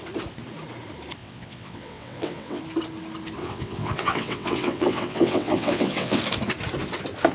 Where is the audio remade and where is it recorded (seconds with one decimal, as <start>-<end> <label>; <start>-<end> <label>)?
0.0-1.2 recorded; 1.2-2.6 remade; 2.6-3.4 recorded; 3.4-6.2 remade; 6.2-7.3 recorded